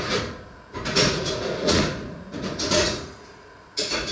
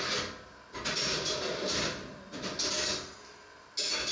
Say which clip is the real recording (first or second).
second